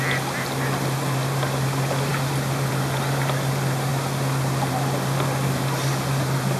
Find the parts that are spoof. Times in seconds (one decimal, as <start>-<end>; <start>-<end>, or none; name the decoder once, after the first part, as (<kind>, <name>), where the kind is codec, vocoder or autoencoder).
none